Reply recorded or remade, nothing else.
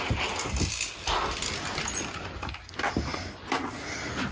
recorded